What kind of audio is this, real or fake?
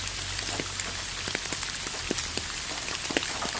real